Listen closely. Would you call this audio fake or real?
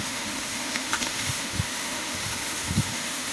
fake